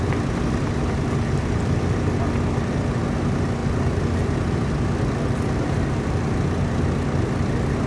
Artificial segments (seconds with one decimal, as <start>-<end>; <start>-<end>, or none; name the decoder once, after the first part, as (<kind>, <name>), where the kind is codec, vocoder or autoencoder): none